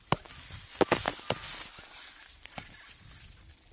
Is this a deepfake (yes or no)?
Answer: no